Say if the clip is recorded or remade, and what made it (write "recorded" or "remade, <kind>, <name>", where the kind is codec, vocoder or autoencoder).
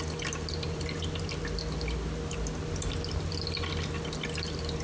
recorded